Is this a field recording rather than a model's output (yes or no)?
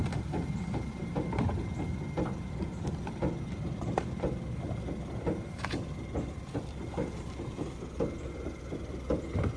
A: no